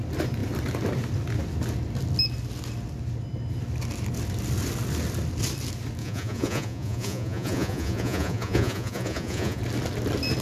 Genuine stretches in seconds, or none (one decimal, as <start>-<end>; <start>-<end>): 0.0-6.0; 9.6-10.4